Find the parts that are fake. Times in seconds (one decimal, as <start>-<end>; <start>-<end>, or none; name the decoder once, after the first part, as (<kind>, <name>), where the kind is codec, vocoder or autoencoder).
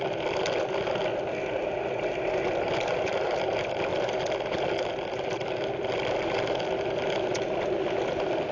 none